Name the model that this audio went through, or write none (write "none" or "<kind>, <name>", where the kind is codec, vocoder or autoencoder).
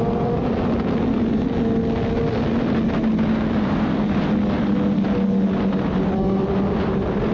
none